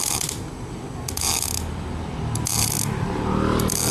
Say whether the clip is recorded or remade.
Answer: recorded